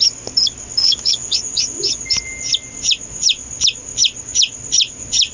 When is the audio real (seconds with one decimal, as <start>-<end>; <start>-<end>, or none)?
0.0-0.8; 2.0-5.3